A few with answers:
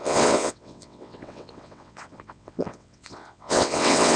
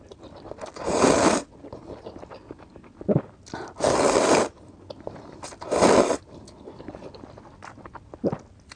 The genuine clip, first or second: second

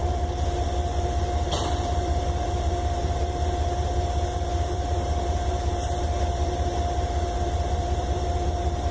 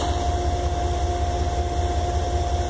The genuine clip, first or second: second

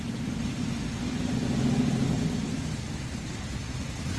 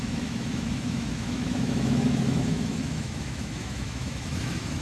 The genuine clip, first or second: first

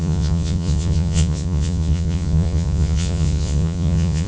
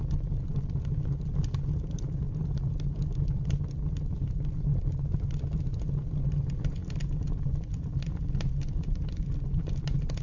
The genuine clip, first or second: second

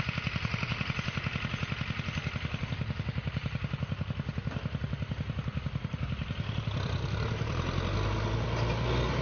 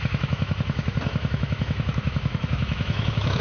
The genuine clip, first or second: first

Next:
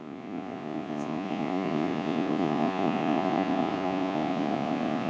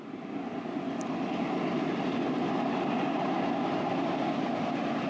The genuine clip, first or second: second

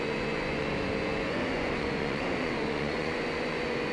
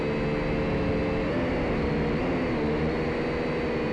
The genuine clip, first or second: second